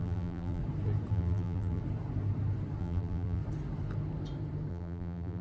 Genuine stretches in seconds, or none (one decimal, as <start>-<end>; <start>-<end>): 0.6-1.1; 1.8-2.8; 3.4-4.7